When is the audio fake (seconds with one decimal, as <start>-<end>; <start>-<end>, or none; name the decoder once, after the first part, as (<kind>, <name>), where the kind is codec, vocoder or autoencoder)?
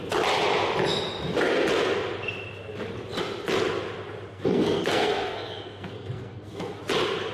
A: 4.3-6.8 (codec, SNAC)